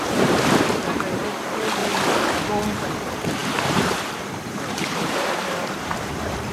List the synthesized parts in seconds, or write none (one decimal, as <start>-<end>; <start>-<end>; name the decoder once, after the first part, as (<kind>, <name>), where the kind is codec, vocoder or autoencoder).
0.0-1.8 (vocoder, BigVGAN v2); 2.8-6.5